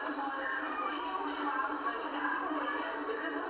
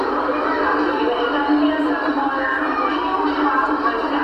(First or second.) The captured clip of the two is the second